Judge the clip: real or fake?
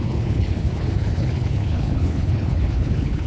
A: fake